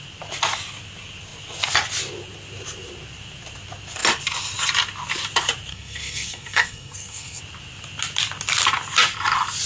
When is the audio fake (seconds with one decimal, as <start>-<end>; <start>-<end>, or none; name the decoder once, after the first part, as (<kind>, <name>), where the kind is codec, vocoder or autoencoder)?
5.7-7.4 (codec, SNAC)